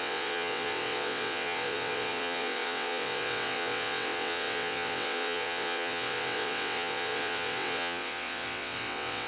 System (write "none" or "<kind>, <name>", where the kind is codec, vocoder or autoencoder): vocoder, WaveNeXt